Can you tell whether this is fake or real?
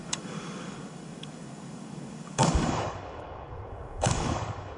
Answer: fake